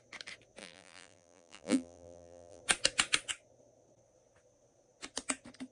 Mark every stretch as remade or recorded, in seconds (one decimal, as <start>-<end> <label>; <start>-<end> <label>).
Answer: 0.0-0.6 recorded; 0.6-2.6 remade; 2.6-5.7 recorded